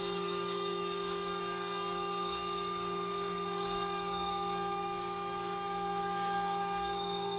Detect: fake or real fake